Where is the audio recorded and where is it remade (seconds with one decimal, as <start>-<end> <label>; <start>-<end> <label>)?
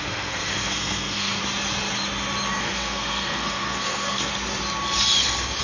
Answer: 0.0-1.4 remade; 1.4-2.6 recorded; 2.6-4.3 remade; 4.3-5.6 recorded